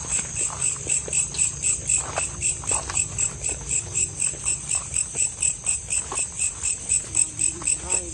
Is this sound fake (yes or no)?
yes